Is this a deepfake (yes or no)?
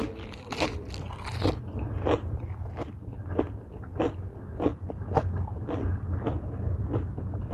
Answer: no